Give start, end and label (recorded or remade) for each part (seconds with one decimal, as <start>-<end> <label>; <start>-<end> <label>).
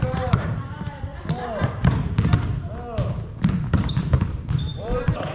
0.0-1.1 remade; 1.1-3.8 recorded; 3.8-5.3 remade